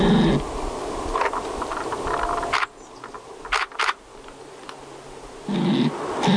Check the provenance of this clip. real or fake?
real